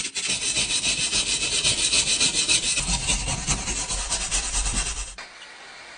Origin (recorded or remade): recorded